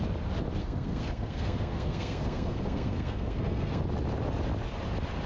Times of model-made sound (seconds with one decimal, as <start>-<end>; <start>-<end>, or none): 0.6-3.8